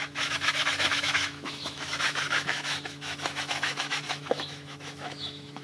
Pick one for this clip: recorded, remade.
remade